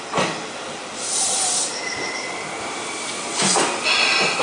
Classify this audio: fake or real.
real